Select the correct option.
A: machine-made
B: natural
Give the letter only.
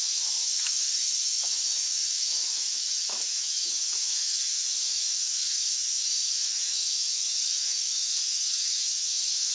A